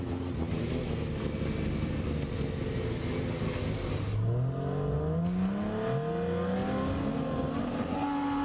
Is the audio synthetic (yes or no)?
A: no